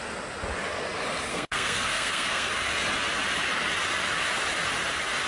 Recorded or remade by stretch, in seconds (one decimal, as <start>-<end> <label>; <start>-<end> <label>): 0.0-1.3 recorded; 1.3-2.5 remade; 2.5-5.3 recorded